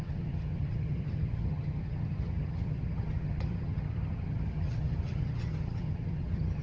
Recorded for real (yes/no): no